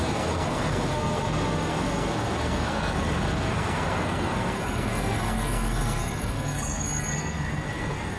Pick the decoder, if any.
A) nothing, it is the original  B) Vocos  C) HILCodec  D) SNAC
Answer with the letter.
D